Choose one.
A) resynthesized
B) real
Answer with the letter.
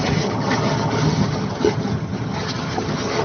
A